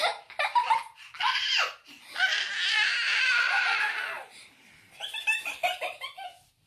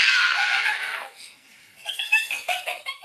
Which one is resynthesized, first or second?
second